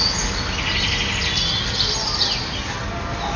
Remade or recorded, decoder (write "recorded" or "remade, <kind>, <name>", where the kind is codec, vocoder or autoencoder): recorded